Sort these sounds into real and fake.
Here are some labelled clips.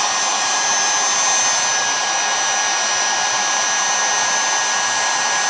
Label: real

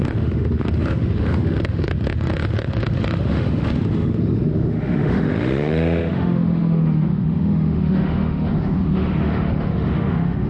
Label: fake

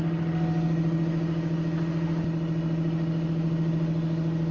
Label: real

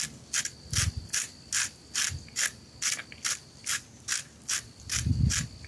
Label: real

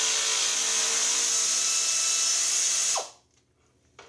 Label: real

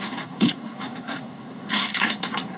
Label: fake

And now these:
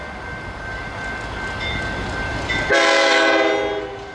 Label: real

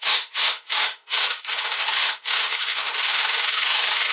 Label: fake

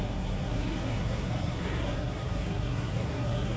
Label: fake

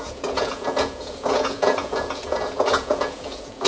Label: fake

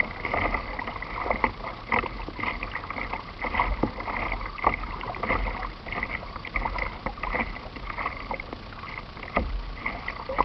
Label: real